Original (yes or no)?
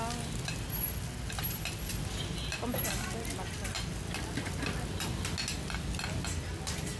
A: yes